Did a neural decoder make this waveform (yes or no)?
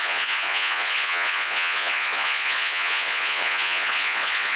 yes